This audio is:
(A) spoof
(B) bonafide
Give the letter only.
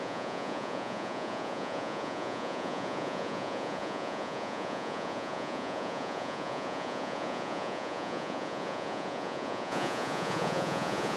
A